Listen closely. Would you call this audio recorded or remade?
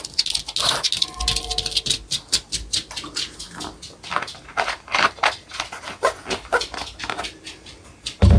recorded